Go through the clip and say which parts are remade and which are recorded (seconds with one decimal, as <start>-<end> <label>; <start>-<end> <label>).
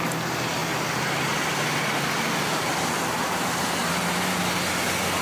0.0-0.6 recorded; 0.6-1.4 remade; 1.4-3.8 recorded; 3.8-4.4 remade; 4.4-5.2 recorded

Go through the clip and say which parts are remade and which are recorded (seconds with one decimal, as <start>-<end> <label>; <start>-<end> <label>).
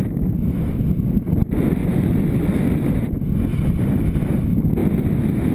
0.0-1.8 recorded; 1.8-2.7 remade; 2.7-3.5 recorded; 3.5-4.3 remade; 4.3-4.8 recorded; 4.8-5.5 remade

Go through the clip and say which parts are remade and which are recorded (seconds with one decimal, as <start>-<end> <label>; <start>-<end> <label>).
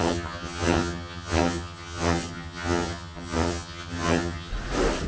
0.0-4.5 remade; 4.5-5.1 recorded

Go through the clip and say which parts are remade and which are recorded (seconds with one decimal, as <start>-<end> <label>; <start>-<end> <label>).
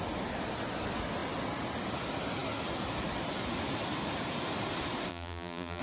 0.0-5.1 recorded; 5.1-5.8 remade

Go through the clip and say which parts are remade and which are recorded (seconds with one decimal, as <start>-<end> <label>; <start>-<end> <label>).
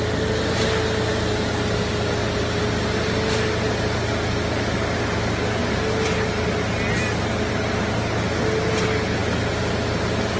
0.0-10.4 recorded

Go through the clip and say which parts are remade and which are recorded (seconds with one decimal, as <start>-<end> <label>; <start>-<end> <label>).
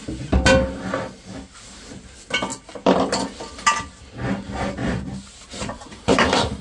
0.0-2.5 recorded; 2.5-3.0 remade; 3.0-4.8 recorded; 4.8-6.6 remade